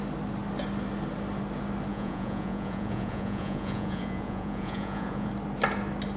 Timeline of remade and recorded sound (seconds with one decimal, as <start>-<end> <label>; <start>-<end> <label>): 0.0-1.9 recorded; 1.9-5.3 remade; 5.3-6.2 recorded